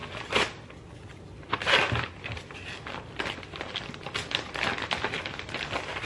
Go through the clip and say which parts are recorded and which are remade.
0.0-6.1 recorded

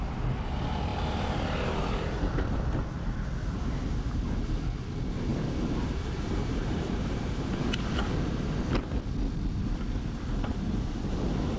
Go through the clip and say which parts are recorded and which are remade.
0.0-0.9 recorded; 0.9-1.9 remade; 1.9-5.3 recorded; 5.3-7.7 remade; 7.7-11.6 recorded

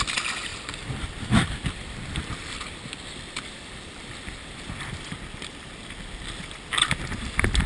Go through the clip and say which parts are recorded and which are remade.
0.0-0.5 recorded; 0.5-4.8 remade; 4.8-7.7 recorded

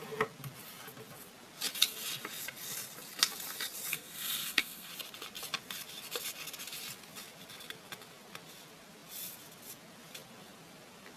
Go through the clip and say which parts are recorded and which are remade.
0.0-3.9 recorded; 3.9-4.9 remade; 4.9-11.2 recorded

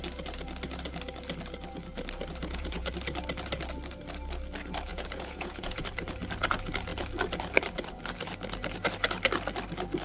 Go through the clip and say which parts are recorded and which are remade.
0.0-2.4 recorded; 2.4-2.9 remade; 2.9-4.9 recorded; 4.9-5.8 remade; 5.8-10.0 recorded

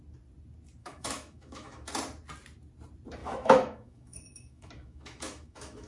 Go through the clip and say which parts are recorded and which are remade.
0.0-0.8 recorded; 0.8-1.9 remade; 1.9-3.2 recorded; 3.2-5.9 remade

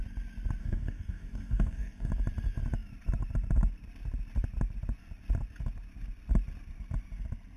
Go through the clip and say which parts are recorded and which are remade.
0.0-0.6 recorded; 0.6-2.1 remade; 2.1-7.6 recorded

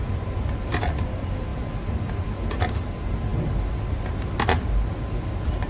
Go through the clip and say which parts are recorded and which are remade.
0.0-5.7 recorded